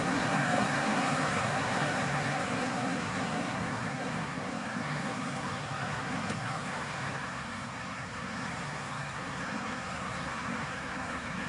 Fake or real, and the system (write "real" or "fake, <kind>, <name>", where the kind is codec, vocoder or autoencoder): fake, codec, SNAC